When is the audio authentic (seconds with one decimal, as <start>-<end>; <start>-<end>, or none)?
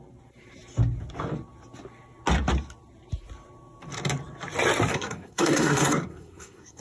0.0-4.9